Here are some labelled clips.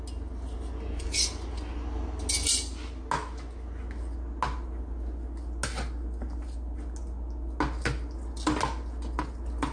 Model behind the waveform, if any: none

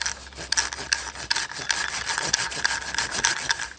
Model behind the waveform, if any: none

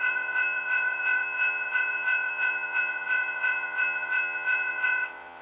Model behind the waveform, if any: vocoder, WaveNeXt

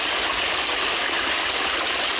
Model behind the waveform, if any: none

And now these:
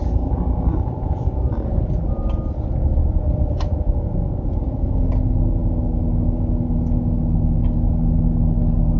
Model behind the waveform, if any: none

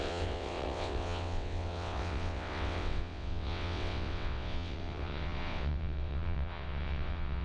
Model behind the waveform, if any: vocoder, WaveNeXt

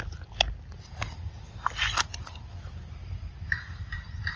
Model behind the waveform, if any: none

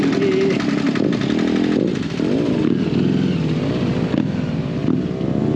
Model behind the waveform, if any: none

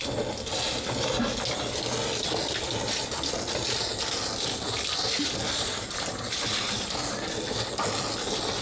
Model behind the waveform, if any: none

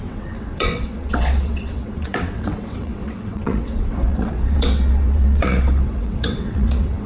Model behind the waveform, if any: vocoder, WaveNeXt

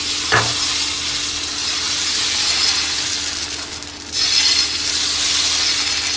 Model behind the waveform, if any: none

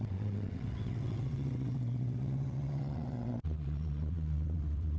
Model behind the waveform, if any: vocoder, WaveNeXt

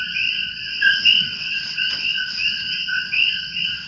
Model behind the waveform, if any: vocoder, WaveNeXt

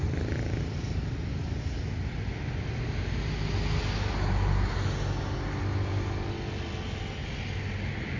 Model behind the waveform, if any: none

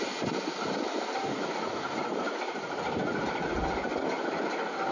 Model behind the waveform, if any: none